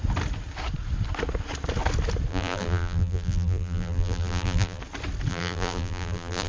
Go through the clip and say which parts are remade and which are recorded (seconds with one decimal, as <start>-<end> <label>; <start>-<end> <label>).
0.0-2.3 recorded; 2.3-4.8 remade; 4.8-5.3 recorded; 5.3-6.5 remade